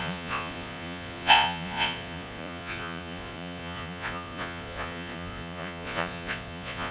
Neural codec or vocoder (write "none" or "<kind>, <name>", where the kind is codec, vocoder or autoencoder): vocoder, Vocos